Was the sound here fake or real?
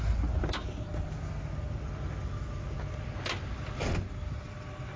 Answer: real